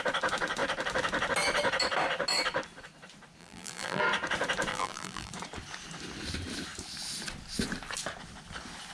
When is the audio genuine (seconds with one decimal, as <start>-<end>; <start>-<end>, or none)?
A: 0.0-3.4; 4.0-4.7; 5.3-8.9